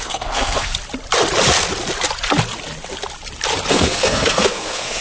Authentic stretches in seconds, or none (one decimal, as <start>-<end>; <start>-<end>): 0.7-3.7